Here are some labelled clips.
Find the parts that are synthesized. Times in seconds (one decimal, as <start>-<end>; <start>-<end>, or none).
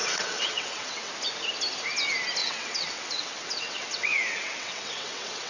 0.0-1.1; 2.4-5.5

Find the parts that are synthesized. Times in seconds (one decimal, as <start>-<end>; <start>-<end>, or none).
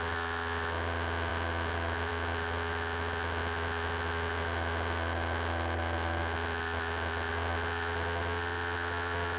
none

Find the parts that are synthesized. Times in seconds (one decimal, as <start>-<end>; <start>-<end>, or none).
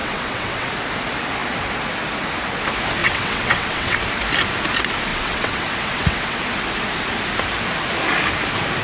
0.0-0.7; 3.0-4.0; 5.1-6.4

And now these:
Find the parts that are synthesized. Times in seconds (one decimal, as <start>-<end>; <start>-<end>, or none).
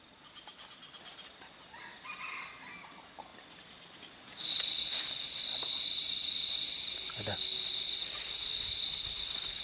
none